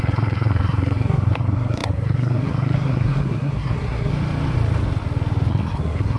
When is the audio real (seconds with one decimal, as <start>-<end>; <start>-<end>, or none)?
4.1-5.5